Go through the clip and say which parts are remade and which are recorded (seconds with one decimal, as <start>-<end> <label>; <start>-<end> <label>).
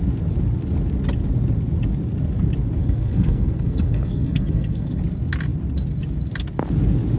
0.0-2.8 recorded; 2.8-5.0 remade; 5.0-7.2 recorded